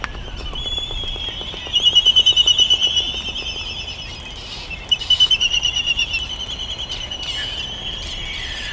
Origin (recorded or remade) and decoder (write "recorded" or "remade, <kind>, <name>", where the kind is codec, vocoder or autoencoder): recorded